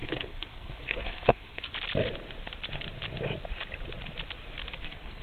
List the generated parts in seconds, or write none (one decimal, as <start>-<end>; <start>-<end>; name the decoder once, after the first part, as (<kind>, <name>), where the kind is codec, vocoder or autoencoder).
0.0-1.7 (codec, SNAC); 4.8-5.2